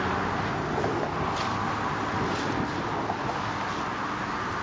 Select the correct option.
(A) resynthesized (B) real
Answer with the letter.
B